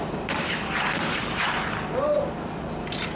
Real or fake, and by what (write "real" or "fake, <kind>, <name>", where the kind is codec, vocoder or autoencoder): fake, vocoder, BigVGAN v2